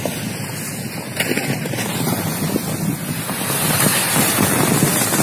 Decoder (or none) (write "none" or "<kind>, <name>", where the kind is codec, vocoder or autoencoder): none